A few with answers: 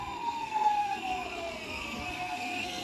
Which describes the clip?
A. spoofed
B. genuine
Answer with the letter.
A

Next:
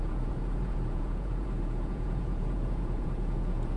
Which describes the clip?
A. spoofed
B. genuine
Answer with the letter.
A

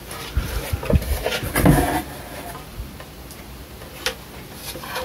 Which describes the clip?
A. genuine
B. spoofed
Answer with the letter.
A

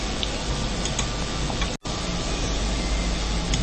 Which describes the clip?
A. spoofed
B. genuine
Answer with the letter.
B